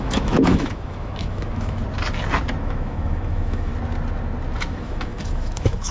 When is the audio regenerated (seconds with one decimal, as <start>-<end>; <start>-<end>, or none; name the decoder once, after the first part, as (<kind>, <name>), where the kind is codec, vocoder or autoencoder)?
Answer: 0.0-1.8 (autoencoder, DAC-VAE); 2.6-3.7; 4.6-5.9

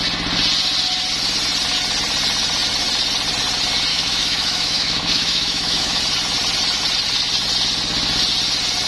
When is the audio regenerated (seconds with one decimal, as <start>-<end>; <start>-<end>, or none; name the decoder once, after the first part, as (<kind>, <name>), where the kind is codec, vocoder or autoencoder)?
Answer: 3.9-6.0 (autoencoder, DAC-VAE)

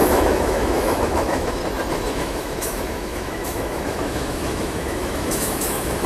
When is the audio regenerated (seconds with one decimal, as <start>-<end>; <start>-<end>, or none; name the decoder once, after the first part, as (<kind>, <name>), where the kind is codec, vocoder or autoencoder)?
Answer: 0.0-1.6 (autoencoder, DAC-VAE); 2.1-6.1

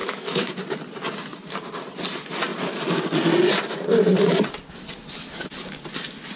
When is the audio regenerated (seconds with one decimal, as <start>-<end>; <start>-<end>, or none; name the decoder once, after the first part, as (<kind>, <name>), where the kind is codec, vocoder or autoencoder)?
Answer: 0.0-0.5 (autoencoder, DAC-VAE)